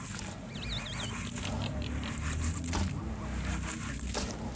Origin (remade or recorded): recorded